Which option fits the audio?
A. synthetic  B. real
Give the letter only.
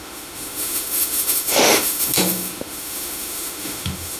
A